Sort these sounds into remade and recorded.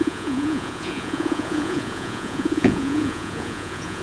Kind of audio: remade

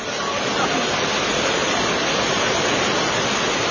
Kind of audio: recorded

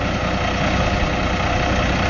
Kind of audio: recorded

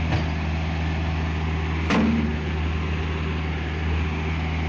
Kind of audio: recorded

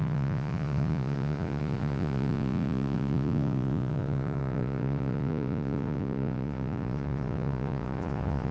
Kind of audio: remade